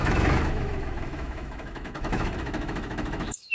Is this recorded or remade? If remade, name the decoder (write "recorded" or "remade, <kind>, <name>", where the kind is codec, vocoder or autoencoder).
remade, autoencoder, DAC-VAE